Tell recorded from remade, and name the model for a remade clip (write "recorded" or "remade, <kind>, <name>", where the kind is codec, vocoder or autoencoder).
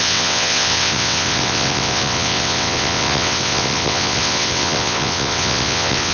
remade, vocoder, WaveNeXt